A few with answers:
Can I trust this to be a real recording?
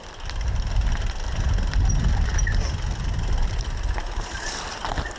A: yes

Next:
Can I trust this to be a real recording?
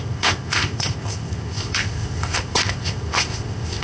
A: no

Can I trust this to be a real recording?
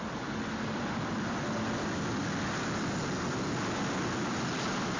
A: yes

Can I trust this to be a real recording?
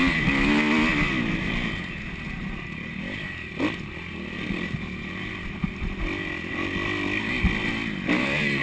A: yes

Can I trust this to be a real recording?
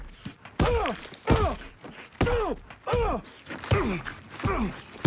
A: yes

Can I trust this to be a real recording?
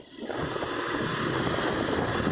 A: yes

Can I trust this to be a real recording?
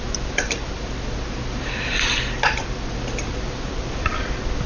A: yes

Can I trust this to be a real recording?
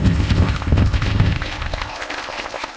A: no